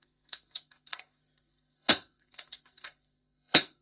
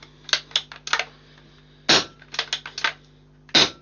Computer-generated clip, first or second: first